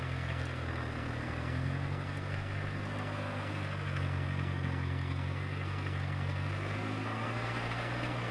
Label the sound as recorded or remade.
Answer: remade